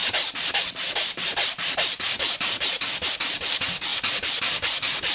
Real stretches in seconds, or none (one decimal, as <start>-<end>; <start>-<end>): 0.0-5.1

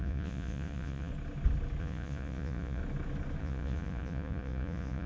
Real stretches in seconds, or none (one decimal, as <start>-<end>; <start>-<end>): 1.1-1.8; 2.8-3.4

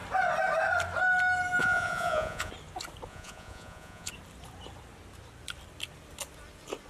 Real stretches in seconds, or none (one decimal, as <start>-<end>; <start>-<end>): 0.0-1.6; 2.5-3.1; 4.1-6.9

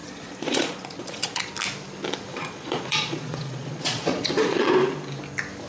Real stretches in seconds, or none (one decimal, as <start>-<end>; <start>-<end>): 1.5-2.3; 4.7-5.7

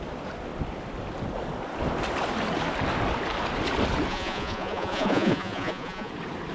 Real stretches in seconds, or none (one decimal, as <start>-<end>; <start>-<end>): 0.0-4.1; 6.1-6.5

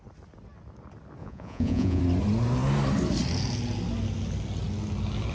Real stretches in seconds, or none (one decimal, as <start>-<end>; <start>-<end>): 0.0-1.2; 2.0-5.3

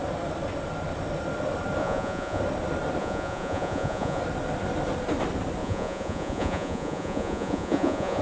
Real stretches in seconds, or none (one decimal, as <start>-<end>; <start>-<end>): 0.0-1.8; 2.4-3.0; 4.2-5.6